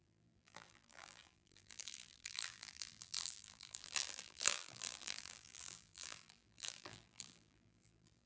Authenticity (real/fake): fake